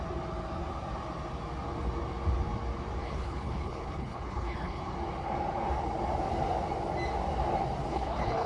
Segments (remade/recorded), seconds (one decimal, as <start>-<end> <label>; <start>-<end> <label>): 0.0-3.0 recorded; 3.0-4.8 remade; 4.8-7.9 recorded; 7.9-8.5 remade